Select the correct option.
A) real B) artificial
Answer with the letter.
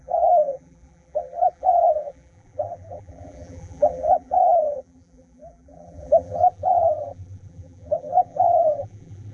B